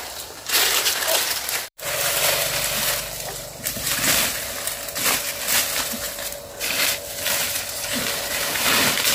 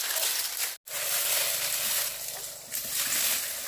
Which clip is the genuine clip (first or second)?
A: second